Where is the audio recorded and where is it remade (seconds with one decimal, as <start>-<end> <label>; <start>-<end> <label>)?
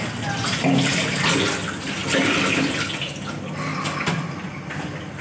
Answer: 0.0-5.2 recorded